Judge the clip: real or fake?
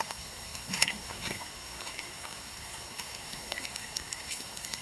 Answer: fake